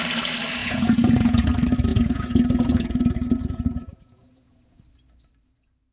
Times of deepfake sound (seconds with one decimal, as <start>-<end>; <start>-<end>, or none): 0.6-1.5; 1.9-4.8